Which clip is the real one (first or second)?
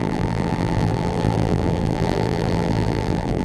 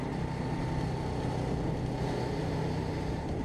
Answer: second